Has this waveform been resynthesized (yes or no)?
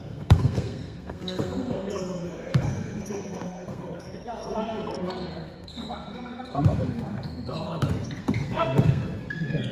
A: yes